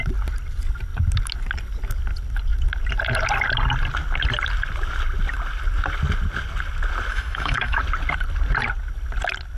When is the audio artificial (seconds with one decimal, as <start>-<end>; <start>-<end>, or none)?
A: 7.1-7.8

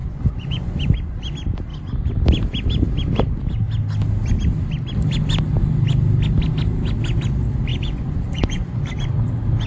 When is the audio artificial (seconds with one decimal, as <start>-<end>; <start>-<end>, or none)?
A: 0.0-0.8; 7.7-8.8